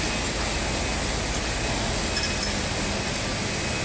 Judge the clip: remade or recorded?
recorded